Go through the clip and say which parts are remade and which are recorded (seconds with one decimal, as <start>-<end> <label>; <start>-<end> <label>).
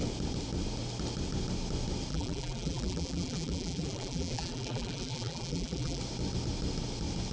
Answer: 0.0-2.1 recorded; 2.1-6.0 remade; 6.0-7.3 recorded